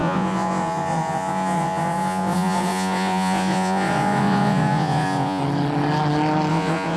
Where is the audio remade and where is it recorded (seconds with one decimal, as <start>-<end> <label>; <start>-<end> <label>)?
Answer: 0.0-5.4 remade; 5.4-6.5 recorded; 6.5-7.0 remade